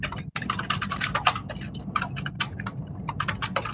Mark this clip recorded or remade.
recorded